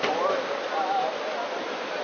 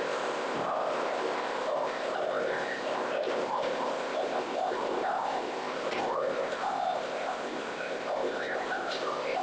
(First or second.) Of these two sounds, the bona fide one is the first